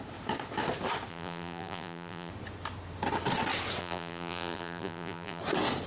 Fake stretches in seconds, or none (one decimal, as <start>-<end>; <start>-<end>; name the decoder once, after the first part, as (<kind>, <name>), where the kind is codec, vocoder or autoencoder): 1.1-2.3 (vocoder, BigVGAN v2); 3.8-5.4